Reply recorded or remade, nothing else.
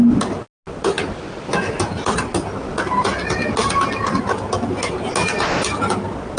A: recorded